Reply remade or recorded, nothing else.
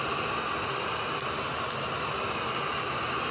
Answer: remade